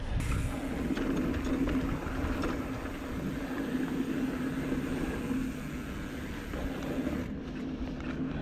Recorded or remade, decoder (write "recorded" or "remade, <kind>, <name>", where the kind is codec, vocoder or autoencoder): recorded